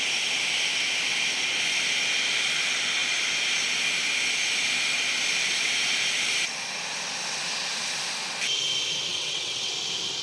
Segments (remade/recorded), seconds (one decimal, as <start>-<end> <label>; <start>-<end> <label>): 0.0-9.1 recorded; 9.1-9.7 remade; 9.7-10.2 recorded